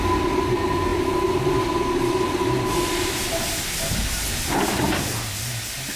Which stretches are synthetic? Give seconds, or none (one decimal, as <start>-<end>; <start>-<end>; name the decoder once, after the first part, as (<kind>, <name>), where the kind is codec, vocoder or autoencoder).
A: none